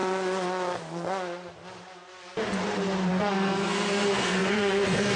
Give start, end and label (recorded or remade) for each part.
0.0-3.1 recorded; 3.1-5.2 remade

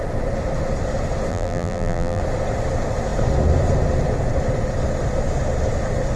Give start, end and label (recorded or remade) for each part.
0.0-1.3 recorded; 1.3-2.2 remade; 2.2-6.2 recorded